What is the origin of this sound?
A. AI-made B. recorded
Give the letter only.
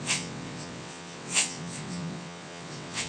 A